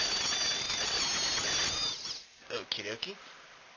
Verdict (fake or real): real